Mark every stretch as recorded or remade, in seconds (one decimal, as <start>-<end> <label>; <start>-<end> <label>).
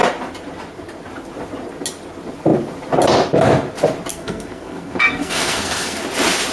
0.0-4.1 recorded; 4.1-6.0 remade; 6.0-6.5 recorded